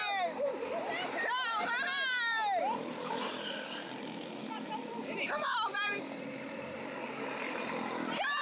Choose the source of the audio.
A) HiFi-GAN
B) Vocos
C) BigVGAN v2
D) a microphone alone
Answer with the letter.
D